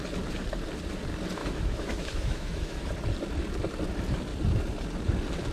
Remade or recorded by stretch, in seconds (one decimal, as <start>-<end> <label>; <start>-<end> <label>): 0.0-1.4 recorded; 1.4-2.9 remade; 2.9-5.5 recorded